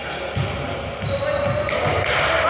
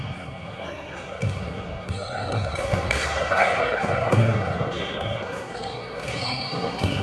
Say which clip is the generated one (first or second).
second